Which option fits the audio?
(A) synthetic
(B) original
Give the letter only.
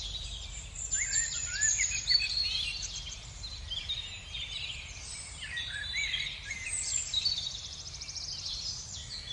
A